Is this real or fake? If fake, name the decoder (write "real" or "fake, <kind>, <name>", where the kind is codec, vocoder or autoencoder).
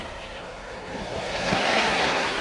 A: fake, codec, SNAC